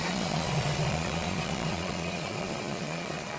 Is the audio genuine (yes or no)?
no